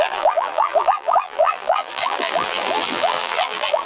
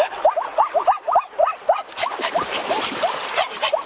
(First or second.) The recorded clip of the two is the second